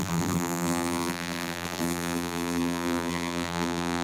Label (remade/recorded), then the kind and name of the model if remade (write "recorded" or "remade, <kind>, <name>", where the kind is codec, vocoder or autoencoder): remade, vocoder, BigVGAN v2